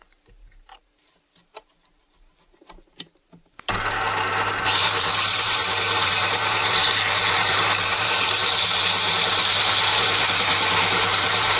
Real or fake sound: fake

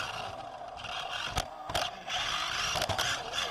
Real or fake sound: real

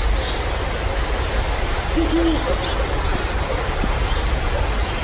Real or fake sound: real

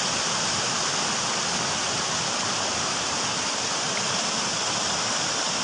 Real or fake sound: real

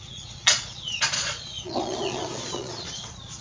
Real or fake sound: fake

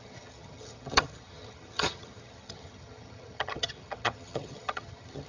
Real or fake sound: fake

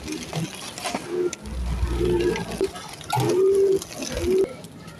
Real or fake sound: real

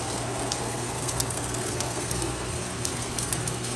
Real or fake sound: fake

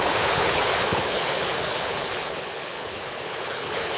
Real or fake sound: fake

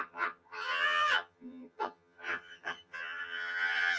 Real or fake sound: fake